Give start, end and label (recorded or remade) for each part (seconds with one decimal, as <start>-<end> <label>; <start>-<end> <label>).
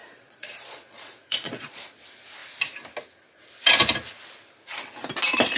0.0-1.8 remade; 1.8-5.6 recorded